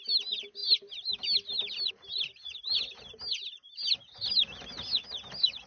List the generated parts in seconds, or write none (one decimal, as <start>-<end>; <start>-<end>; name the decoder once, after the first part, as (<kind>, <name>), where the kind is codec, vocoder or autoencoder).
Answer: none